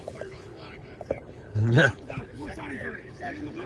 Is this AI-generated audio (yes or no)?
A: yes